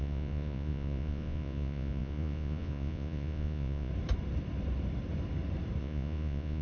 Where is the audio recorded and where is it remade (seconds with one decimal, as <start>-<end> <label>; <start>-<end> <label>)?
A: 0.0-3.9 remade; 3.9-5.8 recorded; 5.8-6.6 remade